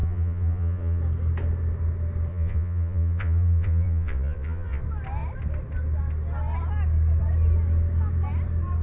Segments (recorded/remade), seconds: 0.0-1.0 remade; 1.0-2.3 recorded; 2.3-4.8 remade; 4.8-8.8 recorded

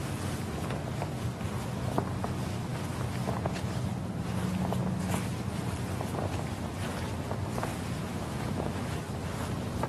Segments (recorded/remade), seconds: 0.0-8.1 recorded; 8.1-9.0 remade; 9.0-9.9 recorded

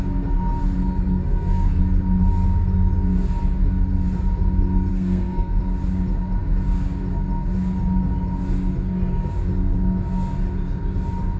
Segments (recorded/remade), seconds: 0.0-0.8 recorded; 0.8-1.8 remade; 1.8-4.9 recorded; 4.9-5.6 remade; 5.6-11.4 recorded

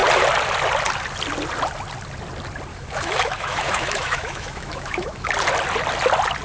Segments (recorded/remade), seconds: 0.0-2.7 recorded; 2.7-5.3 remade; 5.3-6.4 recorded

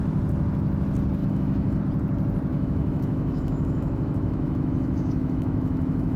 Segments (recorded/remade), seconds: 0.0-1.2 recorded; 1.2-1.8 remade; 1.8-2.5 recorded; 2.5-6.2 remade